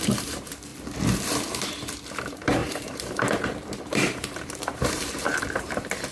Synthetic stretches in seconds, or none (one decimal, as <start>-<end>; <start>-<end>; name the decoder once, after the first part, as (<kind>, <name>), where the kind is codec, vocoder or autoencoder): 0.0-0.7 (vocoder, BigVGAN v2); 2.2-6.1